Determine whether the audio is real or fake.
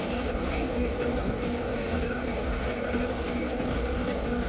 fake